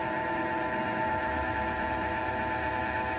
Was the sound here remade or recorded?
remade